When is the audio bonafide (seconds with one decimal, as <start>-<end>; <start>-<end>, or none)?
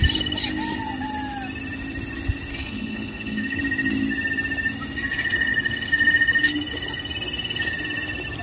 0.0-2.6; 3.6-8.4